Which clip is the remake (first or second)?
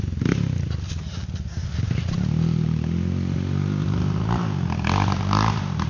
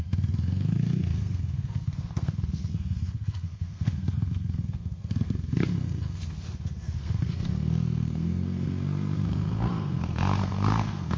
second